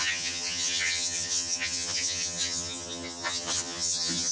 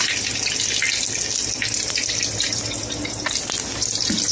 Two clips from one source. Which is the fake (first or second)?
first